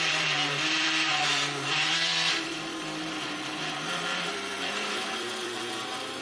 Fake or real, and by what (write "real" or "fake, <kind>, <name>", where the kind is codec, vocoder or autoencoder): fake, vocoder, BigVGAN v2